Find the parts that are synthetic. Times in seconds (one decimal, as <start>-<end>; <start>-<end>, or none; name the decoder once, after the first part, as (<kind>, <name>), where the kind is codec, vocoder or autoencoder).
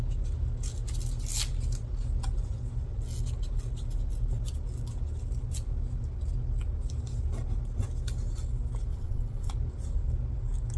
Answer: 8.9-9.5 (vocoder, WaveNeXt)